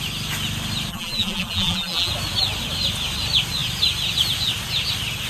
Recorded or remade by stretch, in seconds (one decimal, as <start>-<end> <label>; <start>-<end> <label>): 0.0-0.9 recorded; 0.9-2.1 remade; 2.1-5.3 recorded